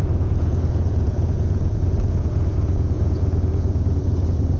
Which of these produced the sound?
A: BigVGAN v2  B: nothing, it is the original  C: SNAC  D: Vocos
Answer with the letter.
D